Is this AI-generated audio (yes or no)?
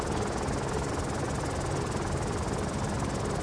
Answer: no